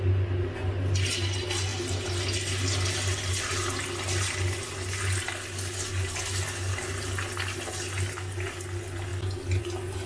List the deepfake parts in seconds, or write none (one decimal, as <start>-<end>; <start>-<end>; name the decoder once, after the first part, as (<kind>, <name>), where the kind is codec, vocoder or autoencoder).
none